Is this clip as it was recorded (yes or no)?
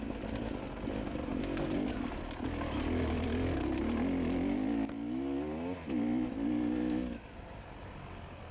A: yes